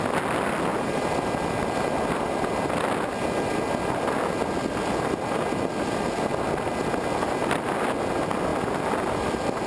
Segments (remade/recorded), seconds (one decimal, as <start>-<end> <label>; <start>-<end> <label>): 0.0-9.7 recorded